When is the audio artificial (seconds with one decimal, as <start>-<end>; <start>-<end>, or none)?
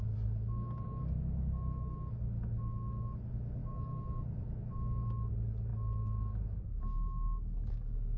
0.0-8.2